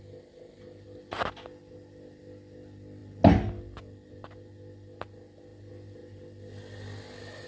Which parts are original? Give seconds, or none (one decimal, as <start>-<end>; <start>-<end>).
0.0-7.5